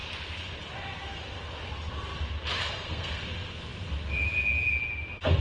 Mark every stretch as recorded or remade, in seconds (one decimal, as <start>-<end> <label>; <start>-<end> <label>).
0.0-2.6 recorded; 2.6-3.2 remade; 3.2-5.4 recorded